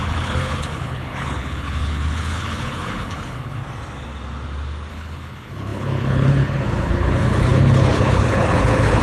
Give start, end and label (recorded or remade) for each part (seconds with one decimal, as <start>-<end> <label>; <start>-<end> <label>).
0.0-3.6 remade; 3.6-4.9 recorded; 4.9-9.0 remade